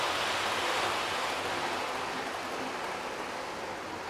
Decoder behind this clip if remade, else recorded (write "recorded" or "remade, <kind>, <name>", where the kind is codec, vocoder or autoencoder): recorded